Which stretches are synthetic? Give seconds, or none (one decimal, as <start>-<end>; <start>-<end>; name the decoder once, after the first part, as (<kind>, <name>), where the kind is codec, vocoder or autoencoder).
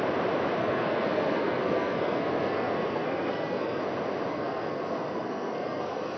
0.6-3.8 (codec, SNAC); 4.3-6.2